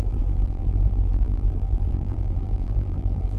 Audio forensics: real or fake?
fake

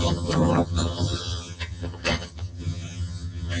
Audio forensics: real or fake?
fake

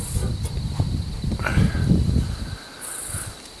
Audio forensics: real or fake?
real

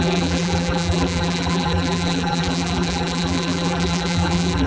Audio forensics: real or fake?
fake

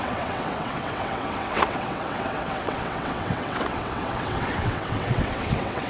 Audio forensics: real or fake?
fake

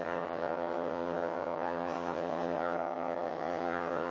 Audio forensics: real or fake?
fake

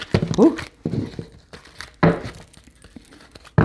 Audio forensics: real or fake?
real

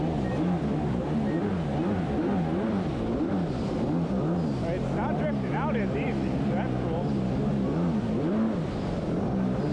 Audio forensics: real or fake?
real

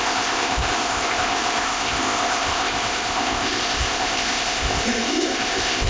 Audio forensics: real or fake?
fake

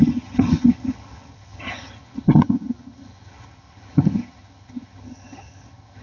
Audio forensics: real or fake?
fake